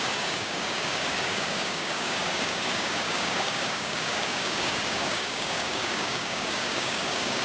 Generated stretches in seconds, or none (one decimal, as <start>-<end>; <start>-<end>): 0.0-7.4